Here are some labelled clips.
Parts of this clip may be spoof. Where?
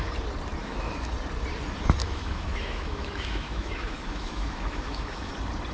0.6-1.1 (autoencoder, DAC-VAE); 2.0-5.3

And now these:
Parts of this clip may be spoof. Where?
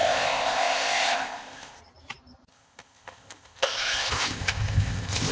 0.0-1.8 (codec, ZipCodec); 2.5-5.3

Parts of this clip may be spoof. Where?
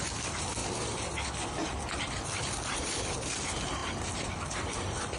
0.0-0.6 (vocoder, BigVGAN v2); 2.0-5.2